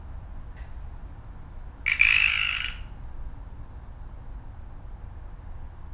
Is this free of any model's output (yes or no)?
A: yes